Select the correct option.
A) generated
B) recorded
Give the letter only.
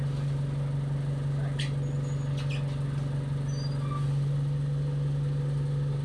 B